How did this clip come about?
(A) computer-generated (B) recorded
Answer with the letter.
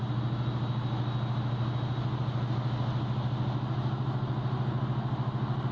B